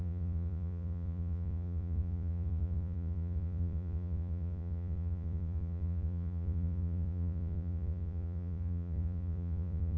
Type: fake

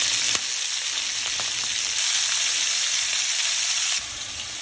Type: real